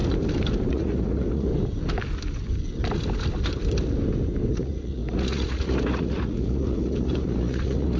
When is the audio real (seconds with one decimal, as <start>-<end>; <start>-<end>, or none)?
0.0-0.7; 1.5-4.5

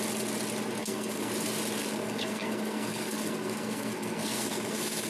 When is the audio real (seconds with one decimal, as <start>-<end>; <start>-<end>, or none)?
0.0-0.8; 1.3-1.8

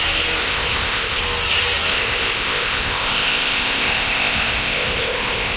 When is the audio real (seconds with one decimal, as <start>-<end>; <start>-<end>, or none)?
0.0-0.4; 1.2-1.9

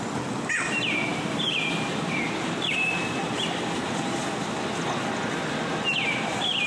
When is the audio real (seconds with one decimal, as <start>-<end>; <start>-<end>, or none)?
4.2-6.0

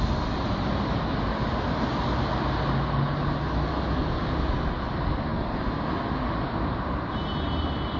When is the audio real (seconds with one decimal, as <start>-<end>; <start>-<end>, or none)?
0.0-8.0